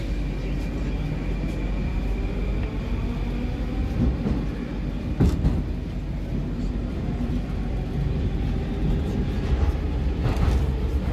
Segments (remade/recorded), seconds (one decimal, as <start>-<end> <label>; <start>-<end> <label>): 0.0-6.8 recorded; 6.8-8.9 remade; 8.9-11.1 recorded